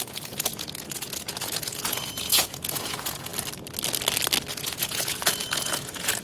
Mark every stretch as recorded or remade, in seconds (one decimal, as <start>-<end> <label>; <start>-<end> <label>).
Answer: 0.0-3.3 remade; 3.3-4.5 recorded; 4.5-6.2 remade